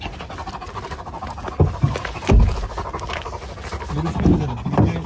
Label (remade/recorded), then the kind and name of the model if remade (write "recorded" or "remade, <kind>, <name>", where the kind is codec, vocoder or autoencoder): recorded